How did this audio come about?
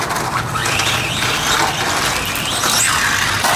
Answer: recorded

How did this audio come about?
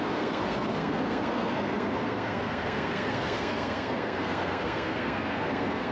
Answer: remade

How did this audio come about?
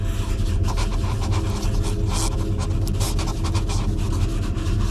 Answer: recorded